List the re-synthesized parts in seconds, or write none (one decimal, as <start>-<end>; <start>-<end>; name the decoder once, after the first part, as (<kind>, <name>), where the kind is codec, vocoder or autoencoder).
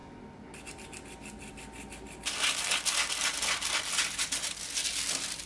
none